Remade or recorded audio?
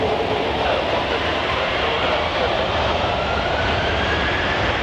remade